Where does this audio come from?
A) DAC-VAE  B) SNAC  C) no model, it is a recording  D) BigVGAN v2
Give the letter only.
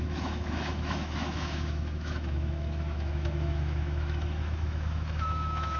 A